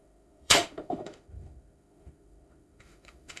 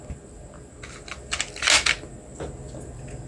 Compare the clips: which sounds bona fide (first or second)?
second